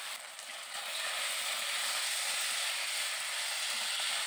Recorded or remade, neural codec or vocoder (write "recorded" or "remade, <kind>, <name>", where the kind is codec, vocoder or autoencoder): recorded